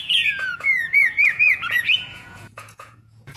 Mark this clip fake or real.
fake